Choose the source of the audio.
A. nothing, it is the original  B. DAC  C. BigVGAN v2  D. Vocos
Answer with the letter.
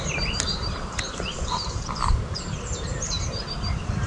C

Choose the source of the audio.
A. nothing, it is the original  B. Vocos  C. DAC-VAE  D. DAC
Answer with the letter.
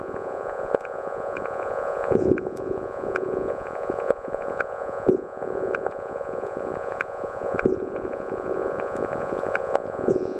B